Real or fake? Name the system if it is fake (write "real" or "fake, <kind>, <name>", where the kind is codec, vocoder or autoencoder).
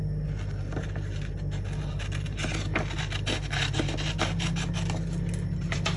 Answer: real